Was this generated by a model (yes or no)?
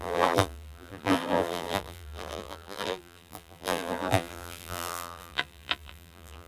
yes